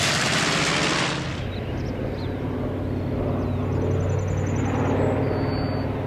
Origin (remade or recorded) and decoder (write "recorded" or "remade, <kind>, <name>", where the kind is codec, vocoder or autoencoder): recorded